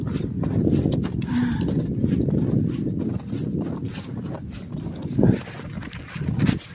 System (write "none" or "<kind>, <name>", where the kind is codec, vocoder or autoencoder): none